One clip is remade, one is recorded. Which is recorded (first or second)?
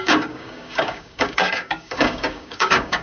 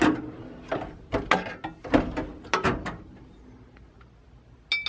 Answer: second